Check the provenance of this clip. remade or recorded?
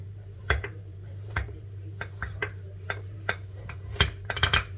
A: remade